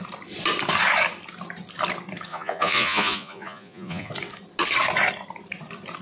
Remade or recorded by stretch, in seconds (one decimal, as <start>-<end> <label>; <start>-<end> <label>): 0.0-2.3 recorded; 2.3-4.1 remade; 4.1-6.0 recorded